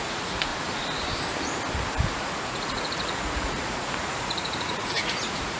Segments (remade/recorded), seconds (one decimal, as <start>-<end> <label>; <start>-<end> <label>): 0.0-0.5 remade; 0.5-2.2 recorded; 2.2-5.6 remade